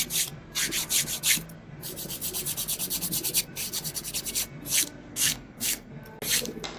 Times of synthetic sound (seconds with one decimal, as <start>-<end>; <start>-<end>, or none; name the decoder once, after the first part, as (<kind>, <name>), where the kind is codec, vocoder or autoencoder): 5.1-5.9 (codec, SNAC)